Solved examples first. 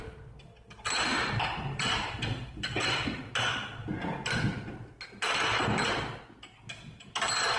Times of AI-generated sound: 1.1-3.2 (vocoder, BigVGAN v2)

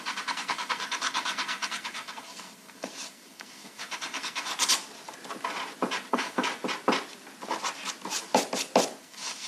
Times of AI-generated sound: 0.0-4.5 (codec, SNAC); 6.1-6.5; 9.0-9.5

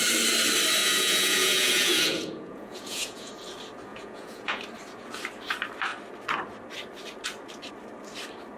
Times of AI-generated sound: 0.8-3.3 (vocoder, Vocos); 3.9-4.6

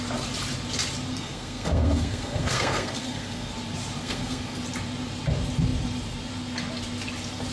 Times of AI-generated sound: 1.1-3.5 (codec, SNAC); 4.0-4.6

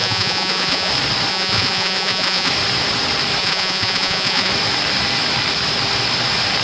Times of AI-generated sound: 0.0-0.9 (vocoder, Vocos); 1.3-2.5; 3.4-4.5

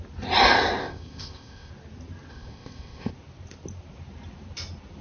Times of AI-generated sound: 0.8-1.7 (codec, ZipCodec); 2.3-3.1